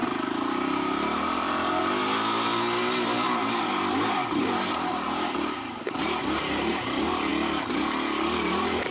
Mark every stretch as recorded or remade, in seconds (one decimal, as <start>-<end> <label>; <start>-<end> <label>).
0.0-1.8 remade; 1.8-3.9 recorded; 3.9-7.3 remade; 7.3-8.9 recorded